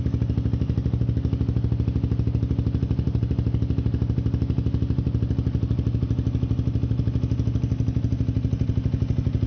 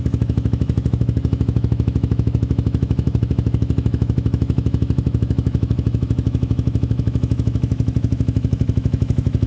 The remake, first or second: second